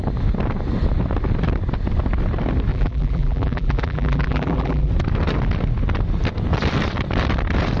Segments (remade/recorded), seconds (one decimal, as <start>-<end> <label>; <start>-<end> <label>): 0.0-2.7 recorded; 2.7-4.9 remade; 4.9-7.8 recorded